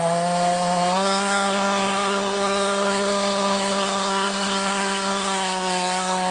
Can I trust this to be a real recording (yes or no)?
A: no